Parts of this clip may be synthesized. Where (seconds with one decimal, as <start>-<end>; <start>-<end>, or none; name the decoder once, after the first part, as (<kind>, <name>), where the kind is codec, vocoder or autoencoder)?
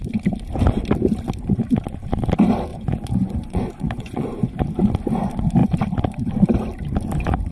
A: 2.7-4.6 (vocoder, Vocos)